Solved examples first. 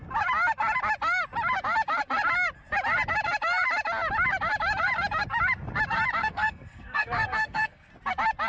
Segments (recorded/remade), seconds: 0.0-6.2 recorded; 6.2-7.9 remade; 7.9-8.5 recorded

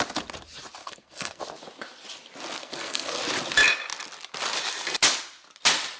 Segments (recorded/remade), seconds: 0.0-0.8 recorded; 0.8-1.4 remade; 1.4-2.6 recorded; 2.6-3.2 remade; 3.2-6.0 recorded

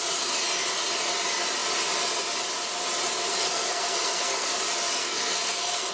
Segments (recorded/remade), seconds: 0.0-3.3 recorded; 3.3-4.6 remade; 4.6-5.0 recorded; 5.0-5.9 remade

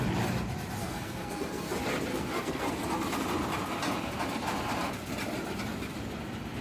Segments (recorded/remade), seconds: 0.0-0.8 recorded; 0.8-1.7 remade; 1.7-2.1 recorded; 2.1-2.7 remade; 2.7-6.6 recorded